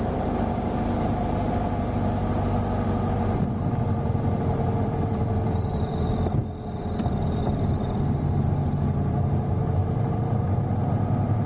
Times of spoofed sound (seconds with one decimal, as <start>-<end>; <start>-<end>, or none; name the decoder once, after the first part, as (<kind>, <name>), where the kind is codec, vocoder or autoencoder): 2.2-6.8 (vocoder, BigVGAN v2); 7.4-9.1; 9.8-10.6